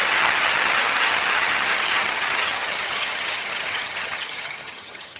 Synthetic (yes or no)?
yes